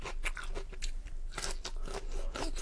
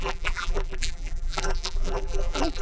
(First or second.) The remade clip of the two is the second